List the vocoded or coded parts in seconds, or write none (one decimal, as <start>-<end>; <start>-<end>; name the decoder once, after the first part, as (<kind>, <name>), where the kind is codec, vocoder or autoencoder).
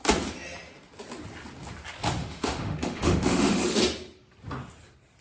2.2-3.6 (autoencoder, DAC-VAE)